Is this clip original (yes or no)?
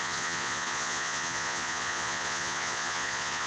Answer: no